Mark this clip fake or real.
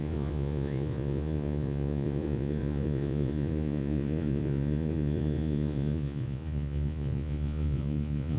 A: fake